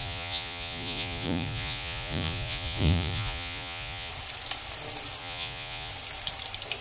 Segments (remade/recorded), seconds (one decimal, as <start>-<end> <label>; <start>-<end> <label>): 0.0-4.1 remade; 4.1-5.2 recorded; 5.2-5.9 remade; 5.9-6.8 recorded